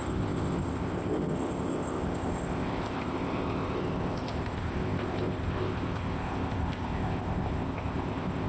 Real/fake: fake